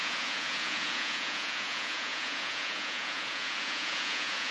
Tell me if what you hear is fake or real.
fake